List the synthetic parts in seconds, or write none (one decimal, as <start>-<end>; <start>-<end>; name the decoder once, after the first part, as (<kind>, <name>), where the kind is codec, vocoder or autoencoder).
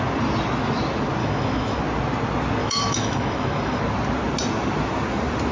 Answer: 1.2-1.8 (autoencoder, DAC-VAE); 2.6-3.8